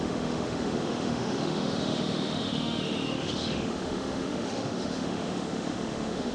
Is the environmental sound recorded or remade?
remade